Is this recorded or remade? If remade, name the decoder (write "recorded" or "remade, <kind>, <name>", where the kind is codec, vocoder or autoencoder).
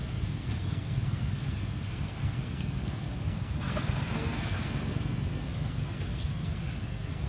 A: remade, codec, SNAC